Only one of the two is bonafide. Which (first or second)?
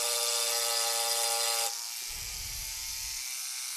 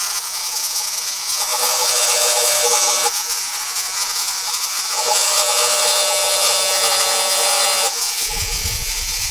first